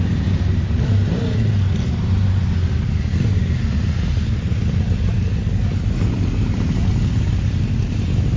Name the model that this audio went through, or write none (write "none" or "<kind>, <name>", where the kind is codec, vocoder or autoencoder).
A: none